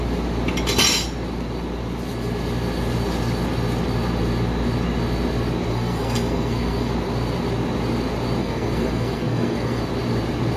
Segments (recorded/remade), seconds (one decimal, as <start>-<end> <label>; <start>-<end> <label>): 0.0-5.7 recorded; 5.7-6.9 remade; 6.9-8.4 recorded; 8.4-9.8 remade; 9.8-10.6 recorded

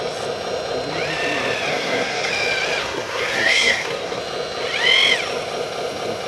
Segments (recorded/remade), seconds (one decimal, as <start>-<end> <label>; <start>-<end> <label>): 0.0-1.7 recorded; 1.7-2.3 remade; 2.3-2.8 recorded; 2.8-4.2 remade; 4.2-6.3 recorded

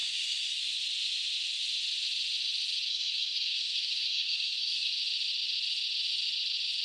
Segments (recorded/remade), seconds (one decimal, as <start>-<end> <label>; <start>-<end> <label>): 0.0-0.6 remade; 0.6-2.9 recorded; 2.9-4.9 remade; 4.9-6.8 recorded

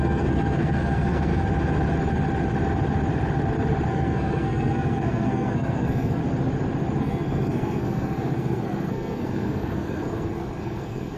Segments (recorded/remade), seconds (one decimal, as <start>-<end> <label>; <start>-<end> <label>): 0.0-1.3 remade; 1.3-3.9 recorded; 3.9-6.2 remade; 6.2-7.0 recorded; 7.0-11.2 remade

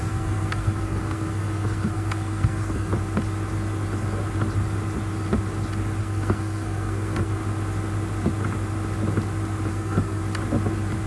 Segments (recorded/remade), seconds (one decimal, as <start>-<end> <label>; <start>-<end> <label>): 0.0-2.9 remade; 2.9-6.0 recorded; 6.0-7.4 remade; 7.4-9.7 recorded; 9.7-10.2 remade; 10.2-11.1 recorded

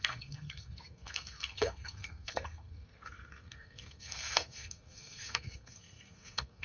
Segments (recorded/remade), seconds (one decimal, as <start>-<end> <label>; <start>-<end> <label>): 0.0-6.6 remade

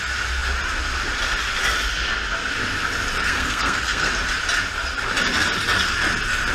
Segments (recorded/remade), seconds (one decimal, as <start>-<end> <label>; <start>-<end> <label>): 0.0-3.2 recorded; 3.2-4.1 remade; 4.1-6.5 recorded